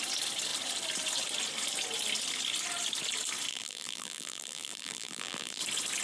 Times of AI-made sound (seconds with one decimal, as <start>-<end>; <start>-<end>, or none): 3.5-5.6